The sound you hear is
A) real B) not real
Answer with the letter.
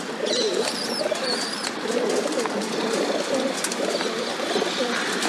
A